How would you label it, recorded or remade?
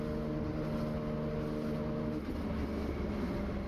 recorded